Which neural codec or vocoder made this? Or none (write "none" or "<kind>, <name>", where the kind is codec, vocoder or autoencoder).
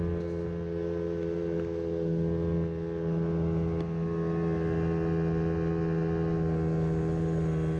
none